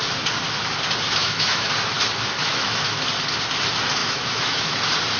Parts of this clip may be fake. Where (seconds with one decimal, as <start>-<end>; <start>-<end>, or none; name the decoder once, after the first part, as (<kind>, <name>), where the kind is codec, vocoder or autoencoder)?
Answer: 1.2-1.7 (autoencoder, DAC-VAE); 2.4-3.0; 4.0-4.8